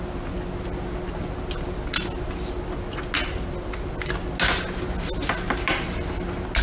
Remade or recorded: recorded